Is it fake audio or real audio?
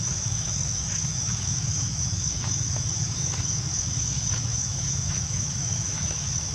fake